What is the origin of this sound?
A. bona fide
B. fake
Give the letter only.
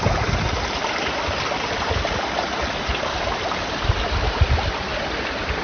A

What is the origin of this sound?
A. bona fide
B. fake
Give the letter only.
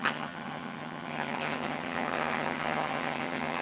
B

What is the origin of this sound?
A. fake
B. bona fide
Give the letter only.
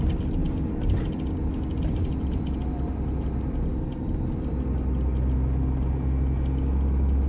B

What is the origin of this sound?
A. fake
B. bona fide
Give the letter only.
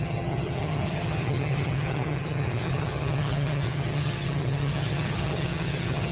A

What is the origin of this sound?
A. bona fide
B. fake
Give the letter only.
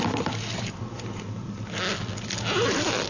A